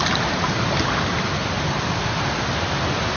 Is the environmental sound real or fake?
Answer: real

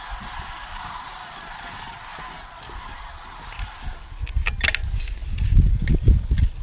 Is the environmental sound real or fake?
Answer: real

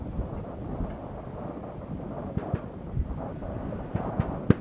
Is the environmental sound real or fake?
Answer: real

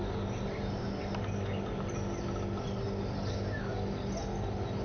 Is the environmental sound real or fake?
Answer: real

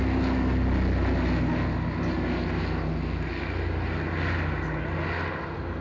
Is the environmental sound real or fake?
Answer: real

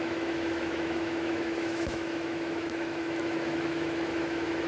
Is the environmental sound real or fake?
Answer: fake